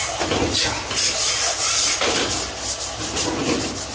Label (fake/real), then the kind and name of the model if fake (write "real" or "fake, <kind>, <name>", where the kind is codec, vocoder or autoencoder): real